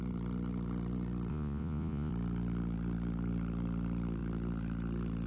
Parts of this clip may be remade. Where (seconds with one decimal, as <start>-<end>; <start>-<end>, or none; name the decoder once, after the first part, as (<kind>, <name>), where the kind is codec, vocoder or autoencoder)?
1.3-2.1 (vocoder, Vocos)